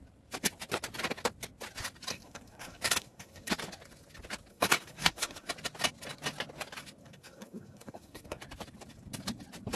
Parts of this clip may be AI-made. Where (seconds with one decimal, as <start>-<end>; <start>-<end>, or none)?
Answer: 2.1-3.5; 4.5-5.5; 7.0-8.4